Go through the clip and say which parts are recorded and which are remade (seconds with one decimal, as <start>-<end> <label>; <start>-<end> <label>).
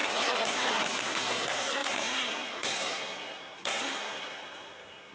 0.0-5.1 remade